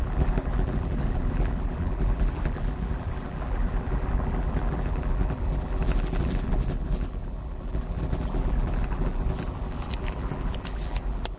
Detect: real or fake fake